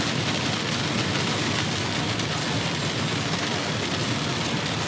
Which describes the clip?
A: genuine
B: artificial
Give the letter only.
A